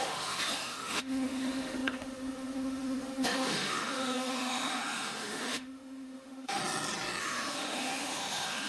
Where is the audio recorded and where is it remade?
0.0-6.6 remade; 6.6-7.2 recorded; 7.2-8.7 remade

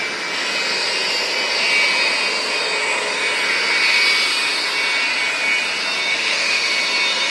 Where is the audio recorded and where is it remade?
0.0-6.1 recorded; 6.1-6.7 remade; 6.7-7.3 recorded

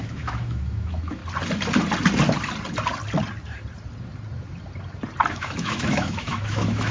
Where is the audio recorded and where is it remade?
0.0-1.2 remade; 1.2-5.3 recorded; 5.3-6.9 remade

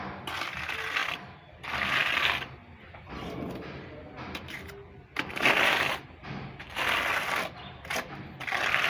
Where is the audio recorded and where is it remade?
0.0-8.9 recorded

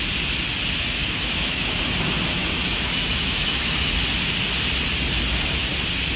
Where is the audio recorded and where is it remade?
0.0-1.0 recorded; 1.0-1.8 remade; 1.8-2.4 recorded; 2.4-3.7 remade; 3.7-6.2 recorded

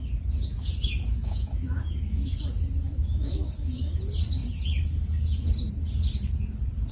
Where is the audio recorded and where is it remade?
0.0-0.5 recorded; 0.5-2.3 remade; 2.3-3.0 recorded; 3.0-3.8 remade; 3.8-6.9 recorded

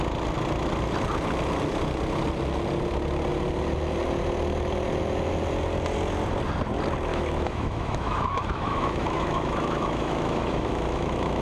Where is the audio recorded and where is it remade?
0.0-7.1 recorded; 7.1-11.4 remade